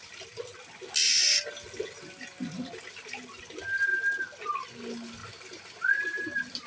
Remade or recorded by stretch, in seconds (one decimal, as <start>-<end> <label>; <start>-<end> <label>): 0.0-6.7 recorded